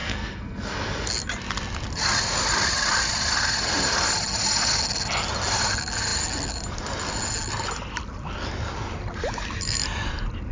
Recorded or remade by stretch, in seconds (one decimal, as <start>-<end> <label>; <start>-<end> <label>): 0.0-1.1 remade; 1.1-10.5 recorded